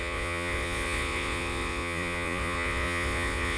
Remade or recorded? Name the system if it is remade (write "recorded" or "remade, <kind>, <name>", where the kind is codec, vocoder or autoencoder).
remade, vocoder, Vocos